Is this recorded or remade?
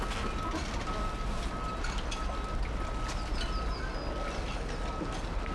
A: recorded